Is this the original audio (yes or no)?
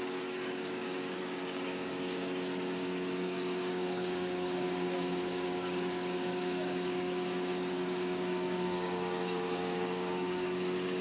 no